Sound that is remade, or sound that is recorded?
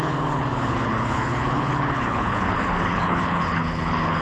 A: remade